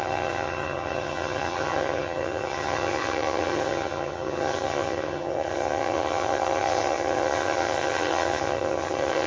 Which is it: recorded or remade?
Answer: remade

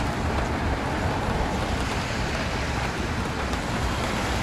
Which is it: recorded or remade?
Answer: remade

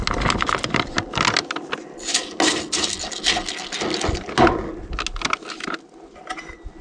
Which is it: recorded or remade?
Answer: recorded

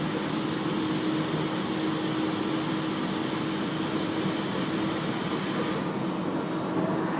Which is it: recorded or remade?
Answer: recorded